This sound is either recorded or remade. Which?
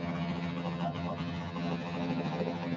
remade